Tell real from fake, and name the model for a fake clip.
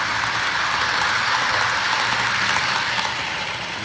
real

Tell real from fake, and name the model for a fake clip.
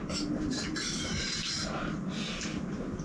real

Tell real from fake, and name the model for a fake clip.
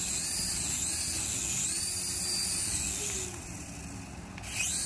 real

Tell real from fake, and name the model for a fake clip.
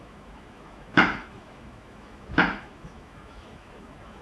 fake, autoencoder, DAC-VAE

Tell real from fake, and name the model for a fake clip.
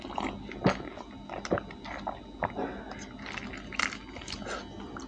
real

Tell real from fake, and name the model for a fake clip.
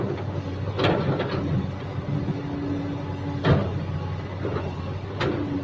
real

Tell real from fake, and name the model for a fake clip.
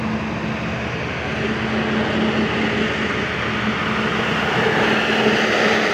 real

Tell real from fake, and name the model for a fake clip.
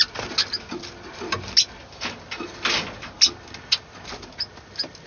real